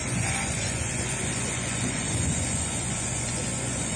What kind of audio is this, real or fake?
fake